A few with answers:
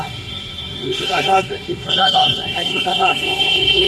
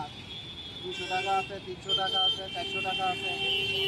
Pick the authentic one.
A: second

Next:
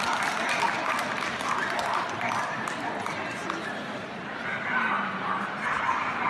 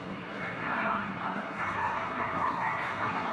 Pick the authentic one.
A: first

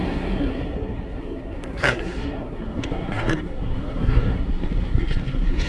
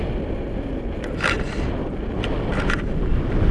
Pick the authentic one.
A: second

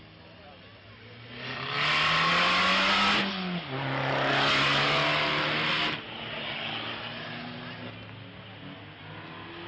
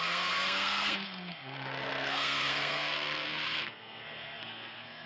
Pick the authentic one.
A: first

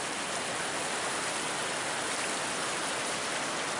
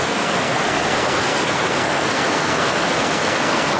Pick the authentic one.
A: first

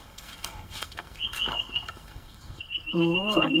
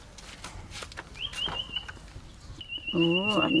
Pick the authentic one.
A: second